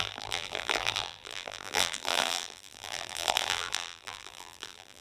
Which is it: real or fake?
fake